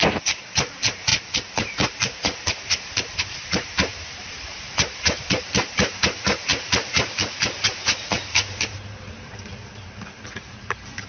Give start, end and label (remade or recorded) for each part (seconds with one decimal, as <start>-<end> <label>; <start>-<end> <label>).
0.0-11.1 remade